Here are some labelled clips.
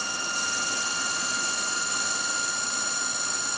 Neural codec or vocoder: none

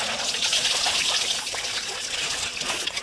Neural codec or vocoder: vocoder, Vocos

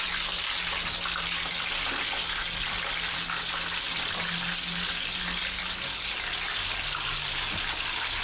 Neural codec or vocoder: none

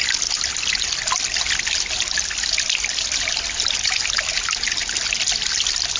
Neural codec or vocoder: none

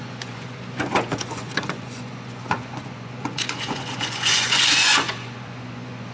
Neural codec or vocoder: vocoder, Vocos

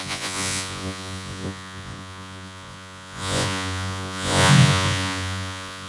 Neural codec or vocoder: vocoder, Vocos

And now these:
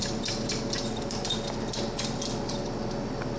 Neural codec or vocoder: none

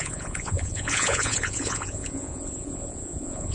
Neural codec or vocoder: vocoder, Vocos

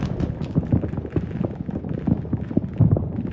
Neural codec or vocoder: none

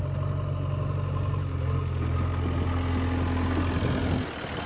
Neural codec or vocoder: none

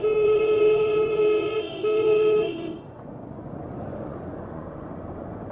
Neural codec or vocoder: vocoder, Vocos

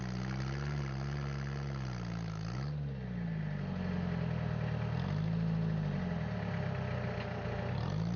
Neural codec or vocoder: none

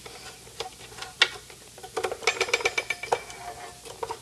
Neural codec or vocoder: none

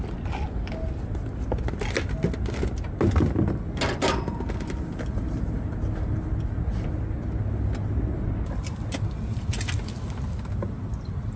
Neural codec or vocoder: none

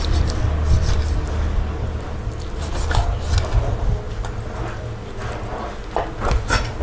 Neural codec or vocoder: none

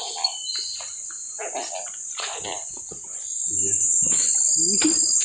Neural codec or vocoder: none